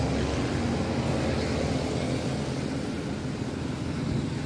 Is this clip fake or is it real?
real